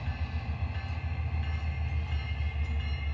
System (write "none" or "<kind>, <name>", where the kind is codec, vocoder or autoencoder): none